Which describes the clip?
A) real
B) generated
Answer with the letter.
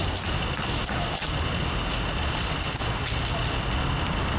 A